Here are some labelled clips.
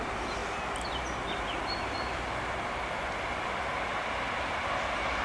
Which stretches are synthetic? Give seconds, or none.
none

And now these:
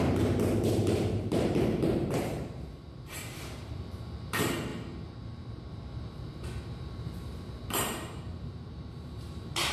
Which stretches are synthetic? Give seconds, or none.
0.0-9.7 (vocoder, BigVGAN v2)

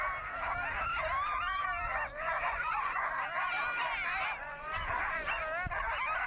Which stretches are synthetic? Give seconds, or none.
1.9-3.1 (vocoder, Vocos); 4.4-5.4

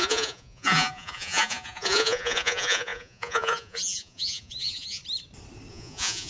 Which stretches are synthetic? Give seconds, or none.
0.0-5.0 (vocoder, Vocos); 5.7-6.3

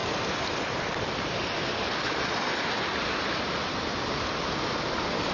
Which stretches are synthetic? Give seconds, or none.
none

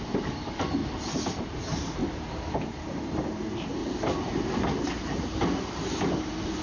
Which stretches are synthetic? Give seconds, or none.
0.0-0.8 (vocoder, BigVGAN v2); 1.4-6.6

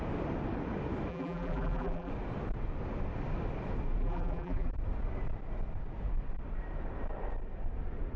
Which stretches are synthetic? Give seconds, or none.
1.1-2.1 (vocoder, BigVGAN v2); 4.0-4.7